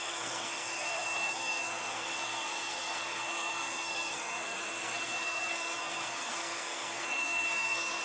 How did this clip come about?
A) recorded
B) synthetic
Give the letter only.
B